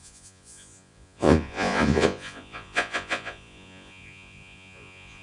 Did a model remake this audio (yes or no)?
yes